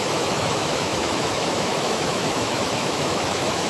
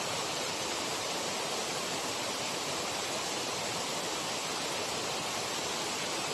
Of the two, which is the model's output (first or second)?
first